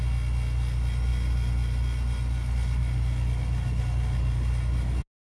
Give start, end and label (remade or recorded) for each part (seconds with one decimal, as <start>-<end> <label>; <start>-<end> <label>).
0.0-5.2 recorded